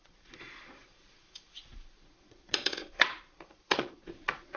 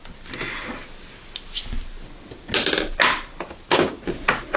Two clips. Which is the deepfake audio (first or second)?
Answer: first